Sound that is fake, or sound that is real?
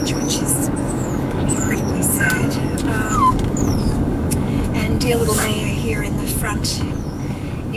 fake